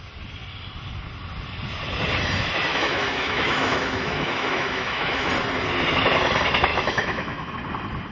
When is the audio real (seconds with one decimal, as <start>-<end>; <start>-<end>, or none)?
0.0-2.7; 5.3-6.7; 7.5-8.1

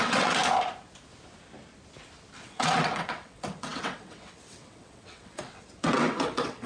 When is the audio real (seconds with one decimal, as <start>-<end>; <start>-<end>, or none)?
0.4-2.4

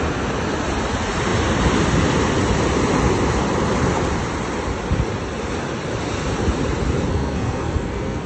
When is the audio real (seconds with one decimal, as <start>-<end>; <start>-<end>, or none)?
0.0-7.1

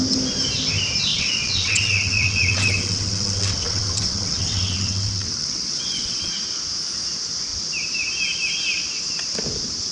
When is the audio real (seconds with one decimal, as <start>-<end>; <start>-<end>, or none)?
0.0-1.1; 6.3-9.9

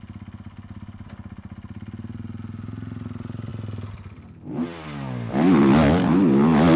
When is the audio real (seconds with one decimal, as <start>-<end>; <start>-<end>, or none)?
0.0-6.8

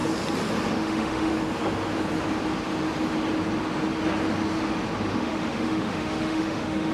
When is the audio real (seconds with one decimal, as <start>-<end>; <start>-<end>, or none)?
0.0-0.7; 1.3-5.1

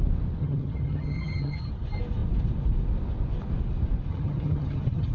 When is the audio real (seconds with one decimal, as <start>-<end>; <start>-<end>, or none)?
0.0-0.4; 1.7-4.1

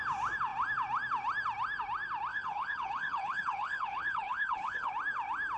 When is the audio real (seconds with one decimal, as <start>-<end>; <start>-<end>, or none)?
0.0-2.3; 4.9-5.6